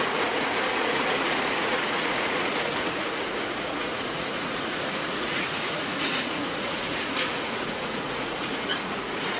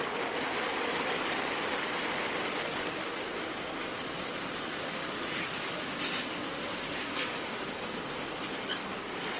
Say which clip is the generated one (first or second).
first